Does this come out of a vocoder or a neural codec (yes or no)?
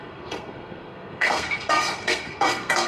yes